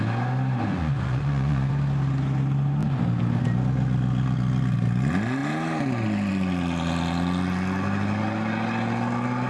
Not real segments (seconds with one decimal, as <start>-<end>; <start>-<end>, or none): 0.7-1.7